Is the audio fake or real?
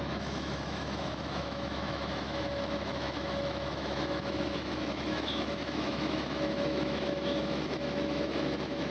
fake